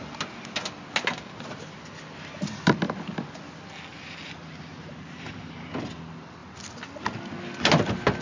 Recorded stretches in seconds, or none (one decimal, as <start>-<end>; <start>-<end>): 0.0-3.9; 5.7-8.2